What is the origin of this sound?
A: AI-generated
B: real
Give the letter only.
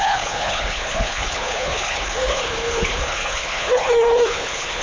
A